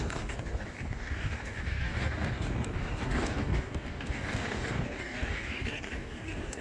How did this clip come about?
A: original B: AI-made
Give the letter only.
B